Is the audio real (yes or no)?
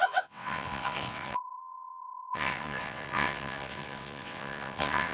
no